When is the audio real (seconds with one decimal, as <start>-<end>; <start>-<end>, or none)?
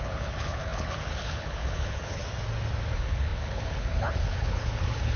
2.2-2.9